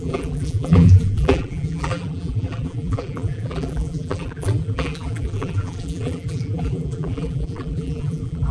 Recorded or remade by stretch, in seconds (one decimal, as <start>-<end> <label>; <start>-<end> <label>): 0.0-8.5 remade

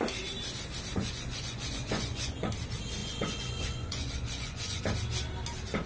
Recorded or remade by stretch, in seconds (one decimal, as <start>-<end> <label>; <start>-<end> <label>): 0.0-0.9 recorded; 0.9-2.5 remade; 2.5-3.0 recorded; 3.0-4.8 remade; 4.8-5.9 recorded

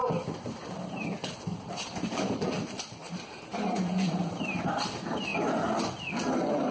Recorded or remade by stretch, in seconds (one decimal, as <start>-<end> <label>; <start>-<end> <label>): 0.0-1.0 remade; 1.0-1.5 recorded; 1.5-4.6 remade; 4.6-6.7 recorded

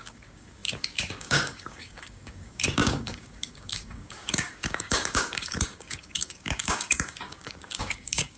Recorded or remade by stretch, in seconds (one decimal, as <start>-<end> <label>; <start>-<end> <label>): 0.0-8.4 remade